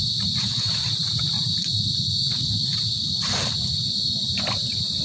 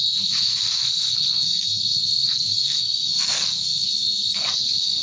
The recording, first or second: first